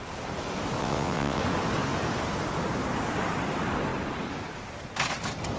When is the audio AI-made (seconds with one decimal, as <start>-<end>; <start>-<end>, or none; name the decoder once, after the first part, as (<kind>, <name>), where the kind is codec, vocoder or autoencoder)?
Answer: 0.8-1.4 (vocoder, WaveNeXt)